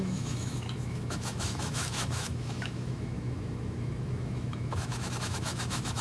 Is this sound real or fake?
fake